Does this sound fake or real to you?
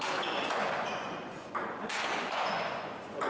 fake